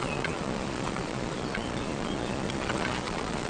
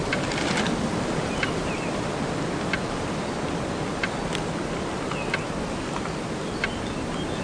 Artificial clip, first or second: first